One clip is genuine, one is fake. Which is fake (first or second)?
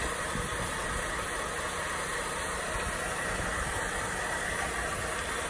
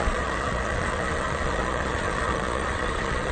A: second